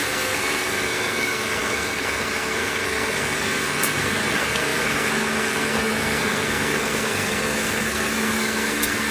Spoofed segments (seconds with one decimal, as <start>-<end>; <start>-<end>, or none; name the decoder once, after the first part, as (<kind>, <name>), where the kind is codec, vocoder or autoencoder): 0.0-9.1 (codec, SNAC)